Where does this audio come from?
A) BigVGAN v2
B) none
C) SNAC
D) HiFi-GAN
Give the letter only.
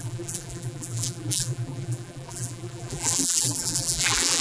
A